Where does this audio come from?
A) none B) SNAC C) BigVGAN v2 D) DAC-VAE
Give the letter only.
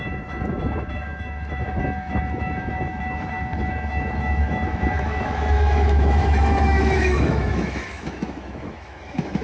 D